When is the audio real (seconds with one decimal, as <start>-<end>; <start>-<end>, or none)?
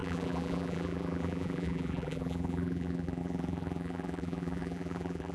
none